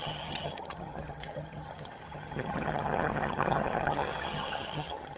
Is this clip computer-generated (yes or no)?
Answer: yes